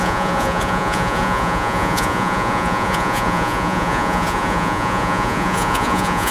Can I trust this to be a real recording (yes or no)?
no